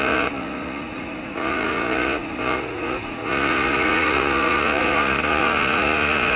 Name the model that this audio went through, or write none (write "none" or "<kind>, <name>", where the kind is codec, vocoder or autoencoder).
vocoder, Vocos